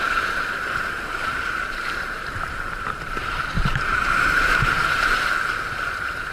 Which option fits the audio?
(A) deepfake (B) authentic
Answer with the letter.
A